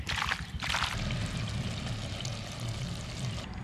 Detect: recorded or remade recorded